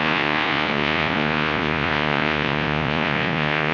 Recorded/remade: remade